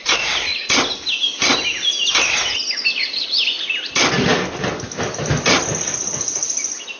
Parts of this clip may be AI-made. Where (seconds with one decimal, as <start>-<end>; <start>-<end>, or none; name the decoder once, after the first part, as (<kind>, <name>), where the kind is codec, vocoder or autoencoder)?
0.0-0.5 (vocoder, BigVGAN v2); 2.8-4.3; 5.3-7.0